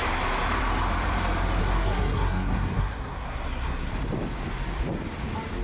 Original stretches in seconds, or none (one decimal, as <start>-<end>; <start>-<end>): 0.0-1.6; 3.9-5.6